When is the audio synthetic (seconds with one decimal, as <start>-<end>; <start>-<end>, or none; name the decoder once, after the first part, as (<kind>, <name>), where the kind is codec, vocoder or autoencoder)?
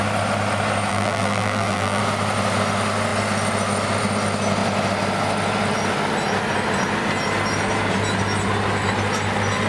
0.9-2.0 (vocoder, BigVGAN v2)